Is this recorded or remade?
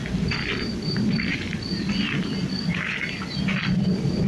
recorded